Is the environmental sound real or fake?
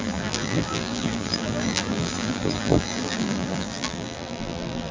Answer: fake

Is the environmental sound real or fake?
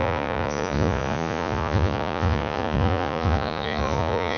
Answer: fake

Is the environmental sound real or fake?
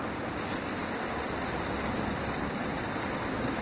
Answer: real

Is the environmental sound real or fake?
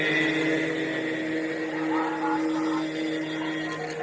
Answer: real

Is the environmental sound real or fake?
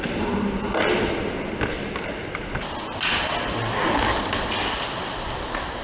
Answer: real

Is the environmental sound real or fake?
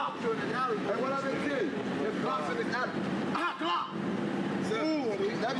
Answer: real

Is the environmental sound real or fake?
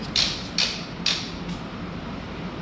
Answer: fake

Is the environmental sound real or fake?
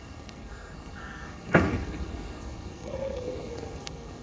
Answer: fake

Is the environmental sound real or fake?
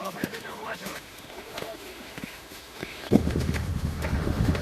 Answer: fake